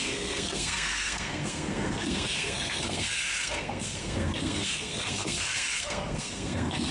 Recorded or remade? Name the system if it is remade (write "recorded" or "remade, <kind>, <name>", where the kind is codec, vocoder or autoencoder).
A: remade, codec, SNAC